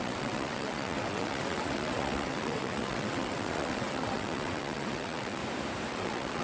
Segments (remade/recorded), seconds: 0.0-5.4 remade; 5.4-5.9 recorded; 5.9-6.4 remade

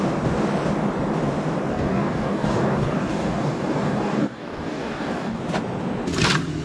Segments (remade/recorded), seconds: 0.0-1.7 recorded; 1.7-5.4 remade; 5.4-6.6 recorded